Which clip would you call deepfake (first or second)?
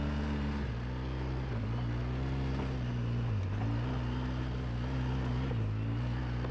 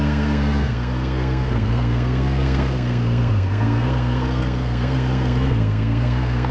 second